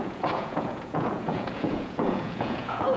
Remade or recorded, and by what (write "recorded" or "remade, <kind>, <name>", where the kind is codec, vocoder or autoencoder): remade, vocoder, Vocos